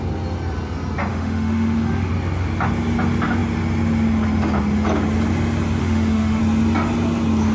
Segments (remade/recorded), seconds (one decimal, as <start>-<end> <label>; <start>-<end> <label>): 0.0-1.1 recorded; 1.1-2.1 remade; 2.1-5.8 recorded; 5.8-6.4 remade; 6.4-7.5 recorded